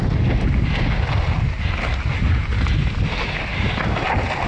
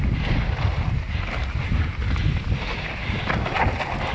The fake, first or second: second